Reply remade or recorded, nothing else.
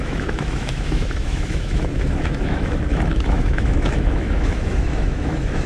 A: remade